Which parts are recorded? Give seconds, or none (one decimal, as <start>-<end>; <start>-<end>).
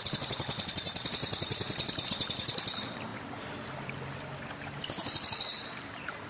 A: 3.1-5.8